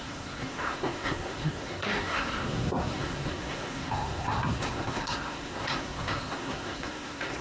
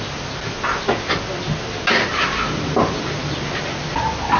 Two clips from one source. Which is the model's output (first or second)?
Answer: first